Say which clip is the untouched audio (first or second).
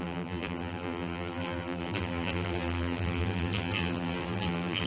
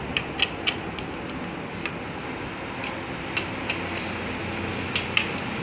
second